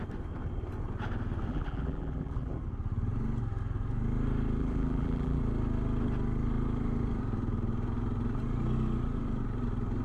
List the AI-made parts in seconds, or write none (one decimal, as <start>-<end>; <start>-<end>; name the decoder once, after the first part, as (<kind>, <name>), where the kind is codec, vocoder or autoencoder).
1.5-2.5 (vocoder, BigVGAN v2); 4.6-5.4